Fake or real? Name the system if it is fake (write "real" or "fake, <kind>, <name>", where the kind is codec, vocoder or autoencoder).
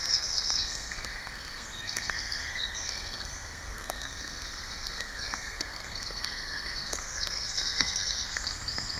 fake, codec, SNAC